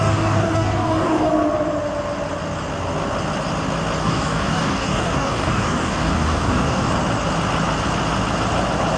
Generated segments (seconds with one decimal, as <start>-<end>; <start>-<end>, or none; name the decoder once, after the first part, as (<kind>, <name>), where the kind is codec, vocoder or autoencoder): 0.0-1.3 (codec, DAC); 4.0-6.9